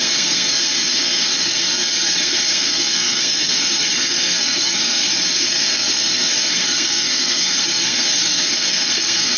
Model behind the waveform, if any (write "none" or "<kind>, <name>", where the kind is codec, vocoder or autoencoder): codec, SNAC